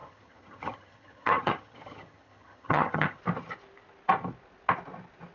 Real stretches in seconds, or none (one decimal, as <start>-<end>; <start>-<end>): 3.2-5.3